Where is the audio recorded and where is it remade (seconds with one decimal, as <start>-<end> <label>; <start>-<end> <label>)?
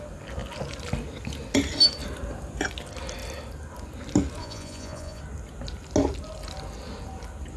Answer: 0.0-4.4 recorded; 4.4-5.2 remade; 5.2-7.6 recorded